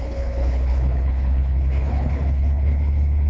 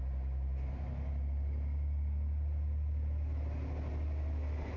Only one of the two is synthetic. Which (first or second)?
first